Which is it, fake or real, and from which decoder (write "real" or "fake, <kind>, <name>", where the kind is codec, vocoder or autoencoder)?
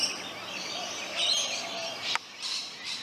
real